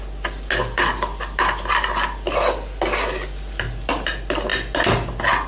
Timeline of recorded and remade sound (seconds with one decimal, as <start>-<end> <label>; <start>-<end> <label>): 0.0-5.5 recorded